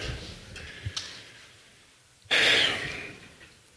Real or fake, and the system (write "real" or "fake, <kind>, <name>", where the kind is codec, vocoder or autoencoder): real